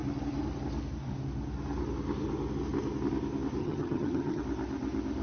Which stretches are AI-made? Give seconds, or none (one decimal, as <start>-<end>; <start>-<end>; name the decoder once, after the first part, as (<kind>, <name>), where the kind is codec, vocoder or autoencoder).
3.6-4.4 (vocoder, HiFi-GAN)